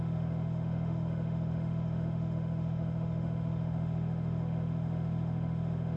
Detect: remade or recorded remade